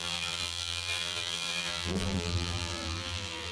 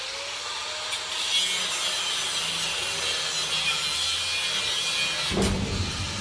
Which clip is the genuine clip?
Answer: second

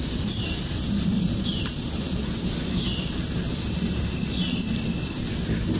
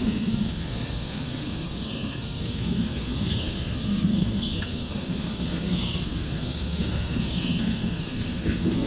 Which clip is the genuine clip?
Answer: first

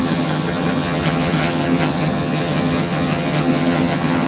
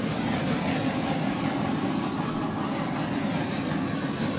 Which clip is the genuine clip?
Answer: second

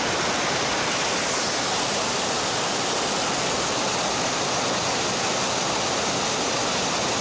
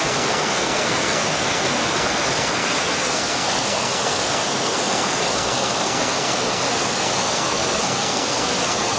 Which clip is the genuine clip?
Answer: first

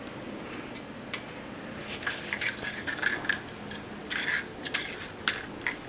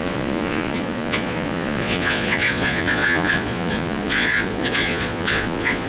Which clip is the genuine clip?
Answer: first